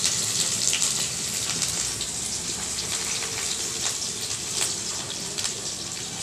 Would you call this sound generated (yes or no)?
yes